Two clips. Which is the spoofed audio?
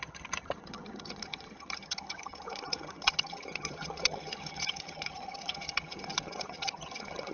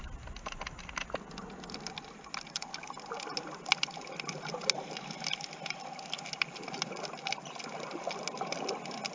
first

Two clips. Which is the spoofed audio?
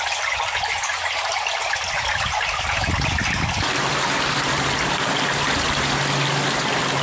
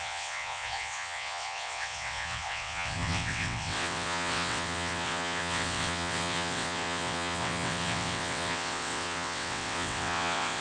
second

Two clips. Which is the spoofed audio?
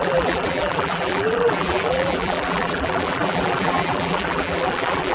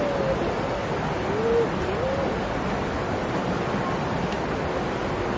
first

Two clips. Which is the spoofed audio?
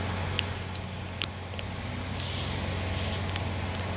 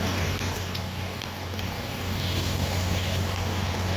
second